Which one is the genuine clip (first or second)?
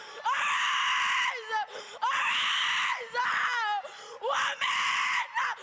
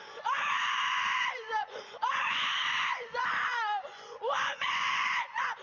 first